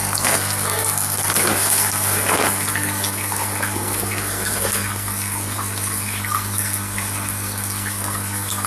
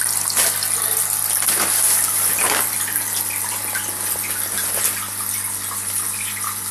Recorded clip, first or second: second